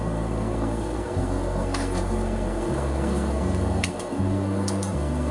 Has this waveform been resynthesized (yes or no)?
yes